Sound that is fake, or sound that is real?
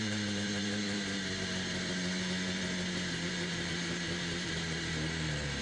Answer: fake